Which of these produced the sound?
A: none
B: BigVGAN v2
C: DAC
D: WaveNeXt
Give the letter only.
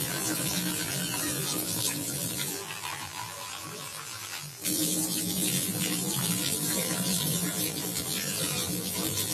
B